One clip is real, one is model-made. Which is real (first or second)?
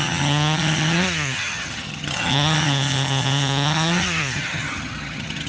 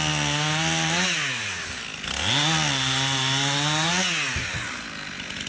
second